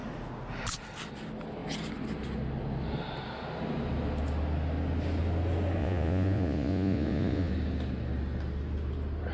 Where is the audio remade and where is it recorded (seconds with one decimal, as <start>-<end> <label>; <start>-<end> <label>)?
0.0-5.8 recorded; 5.8-7.5 remade; 7.5-9.3 recorded